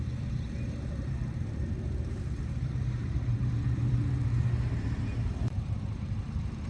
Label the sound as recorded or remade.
remade